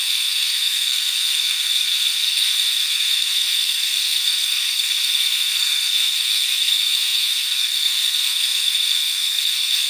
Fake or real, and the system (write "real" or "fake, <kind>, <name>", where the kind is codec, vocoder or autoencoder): fake, codec, SNAC